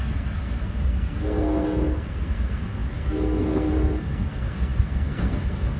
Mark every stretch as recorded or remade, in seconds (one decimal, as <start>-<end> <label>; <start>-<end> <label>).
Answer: 0.0-5.8 remade